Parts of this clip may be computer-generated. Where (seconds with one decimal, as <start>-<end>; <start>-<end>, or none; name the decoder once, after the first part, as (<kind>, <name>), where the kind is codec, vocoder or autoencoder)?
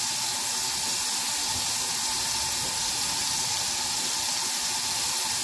none